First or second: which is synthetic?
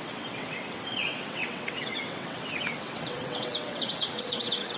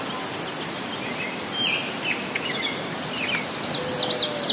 first